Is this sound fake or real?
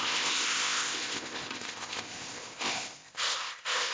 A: fake